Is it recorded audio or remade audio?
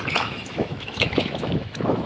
remade